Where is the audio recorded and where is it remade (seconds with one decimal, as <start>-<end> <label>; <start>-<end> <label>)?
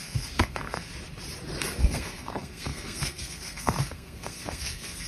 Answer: 0.0-0.9 remade; 0.9-1.7 recorded; 1.7-5.1 remade